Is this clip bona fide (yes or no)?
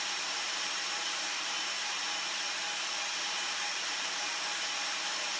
no